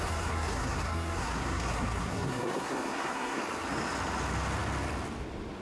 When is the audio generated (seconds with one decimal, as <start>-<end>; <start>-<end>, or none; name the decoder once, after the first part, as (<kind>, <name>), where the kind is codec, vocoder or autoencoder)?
0.0-3.4 (codec, SNAC)